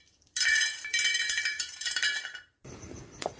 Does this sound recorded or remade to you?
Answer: remade